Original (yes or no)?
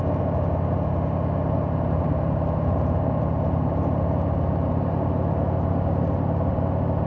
yes